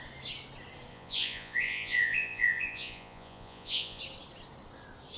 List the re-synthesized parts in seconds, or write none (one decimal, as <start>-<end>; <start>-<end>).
0.9-4.0